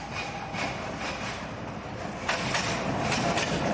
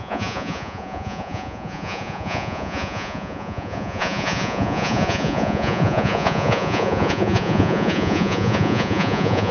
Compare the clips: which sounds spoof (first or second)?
second